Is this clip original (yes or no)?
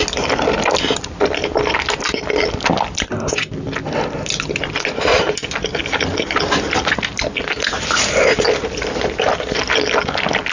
yes